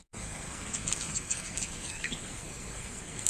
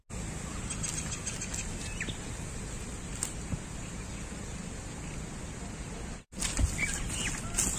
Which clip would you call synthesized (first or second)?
first